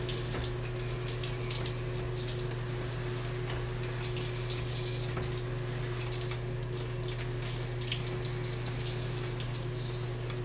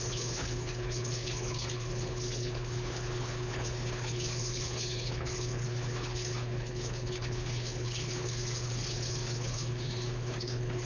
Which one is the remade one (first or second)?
second